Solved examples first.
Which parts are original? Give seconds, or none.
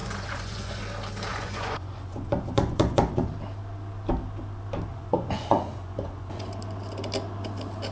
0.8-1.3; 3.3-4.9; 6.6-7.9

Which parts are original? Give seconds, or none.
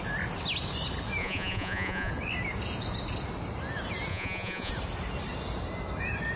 0.0-1.2; 2.1-4.1; 4.7-6.4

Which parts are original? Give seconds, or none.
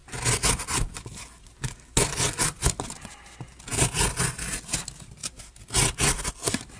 0.0-6.8